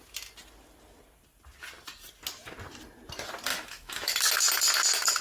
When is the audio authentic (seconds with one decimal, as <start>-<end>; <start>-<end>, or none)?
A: 0.0-3.5; 4.1-5.2